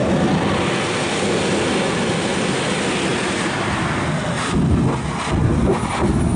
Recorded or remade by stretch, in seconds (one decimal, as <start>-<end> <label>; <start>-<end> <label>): 0.0-6.4 recorded